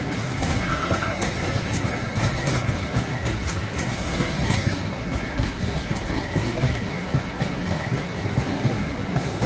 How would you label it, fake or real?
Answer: fake